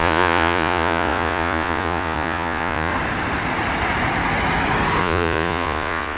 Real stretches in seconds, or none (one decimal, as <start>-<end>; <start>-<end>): 2.9-5.0